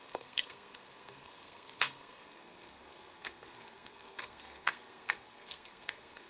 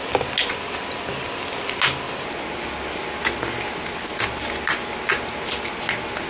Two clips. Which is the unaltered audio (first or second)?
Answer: second